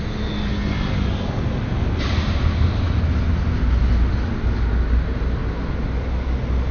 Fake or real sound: real